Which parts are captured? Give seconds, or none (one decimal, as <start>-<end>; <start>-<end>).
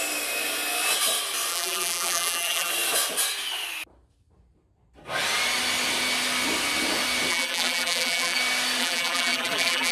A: 0.0-1.5; 2.7-7.3; 8.4-8.8